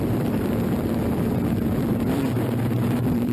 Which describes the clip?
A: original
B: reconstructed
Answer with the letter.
B